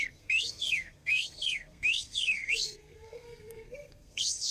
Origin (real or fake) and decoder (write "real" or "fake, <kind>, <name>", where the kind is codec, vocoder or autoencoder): fake, codec, SNAC